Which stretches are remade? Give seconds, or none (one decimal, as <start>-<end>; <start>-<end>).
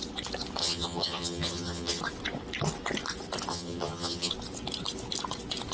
0.6-2.0; 3.5-4.3